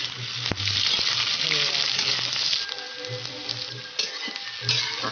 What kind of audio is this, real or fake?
real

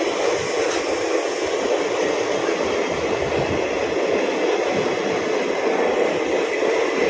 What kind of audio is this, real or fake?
real